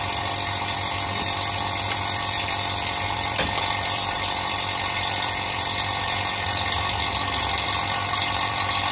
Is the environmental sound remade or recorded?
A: remade